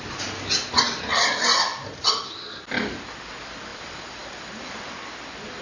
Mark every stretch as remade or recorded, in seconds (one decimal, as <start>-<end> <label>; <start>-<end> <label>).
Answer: 0.0-1.7 recorded; 1.7-3.0 remade; 3.0-3.7 recorded; 3.7-4.9 remade; 4.9-5.6 recorded